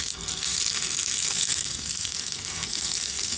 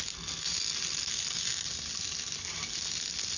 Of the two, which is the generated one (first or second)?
first